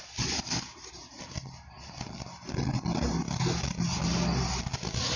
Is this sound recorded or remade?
recorded